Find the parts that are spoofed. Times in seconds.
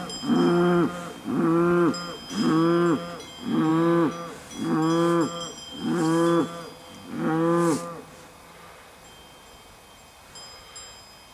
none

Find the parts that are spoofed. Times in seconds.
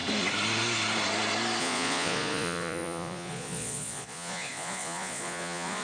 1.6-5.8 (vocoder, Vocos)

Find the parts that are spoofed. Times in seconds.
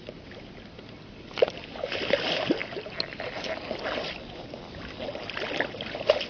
none